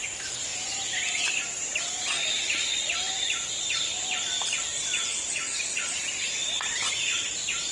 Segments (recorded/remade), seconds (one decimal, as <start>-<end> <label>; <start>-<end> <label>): 0.0-7.7 recorded

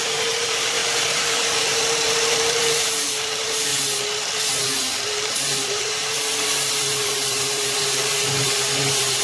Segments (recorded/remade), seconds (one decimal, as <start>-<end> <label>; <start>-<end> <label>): 0.0-3.7 remade; 3.7-4.5 recorded; 4.5-9.2 remade